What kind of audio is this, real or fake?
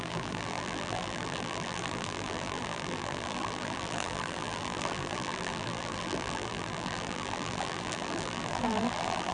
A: fake